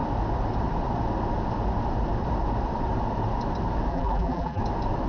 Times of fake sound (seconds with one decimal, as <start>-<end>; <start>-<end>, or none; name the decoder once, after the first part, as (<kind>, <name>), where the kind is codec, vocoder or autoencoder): 3.9-4.6 (vocoder, BigVGAN v2)